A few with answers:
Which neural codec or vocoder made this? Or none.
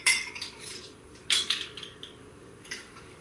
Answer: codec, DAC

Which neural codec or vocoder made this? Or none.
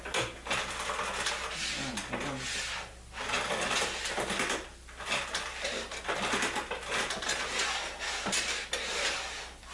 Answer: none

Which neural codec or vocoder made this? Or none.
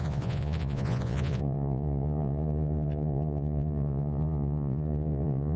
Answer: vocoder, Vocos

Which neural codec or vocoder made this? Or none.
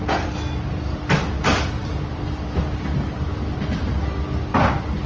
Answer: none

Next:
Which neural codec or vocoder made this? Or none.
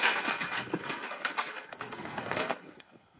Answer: codec, SNAC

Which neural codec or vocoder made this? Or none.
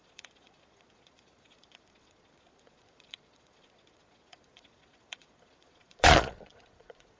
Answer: vocoder, Vocos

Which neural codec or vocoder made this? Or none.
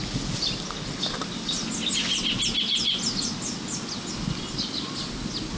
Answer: none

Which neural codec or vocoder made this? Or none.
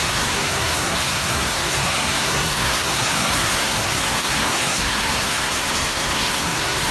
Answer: codec, SNAC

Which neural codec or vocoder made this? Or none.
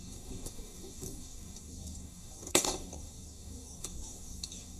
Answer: codec, DAC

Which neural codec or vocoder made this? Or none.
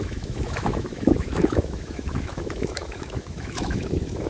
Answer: autoencoder, DAC-VAE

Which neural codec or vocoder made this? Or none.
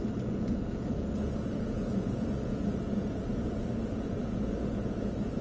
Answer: vocoder, Vocos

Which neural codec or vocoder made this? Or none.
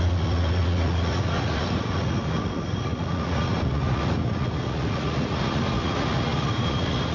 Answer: vocoder, Vocos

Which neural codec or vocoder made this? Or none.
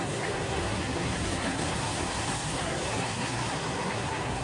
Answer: codec, SNAC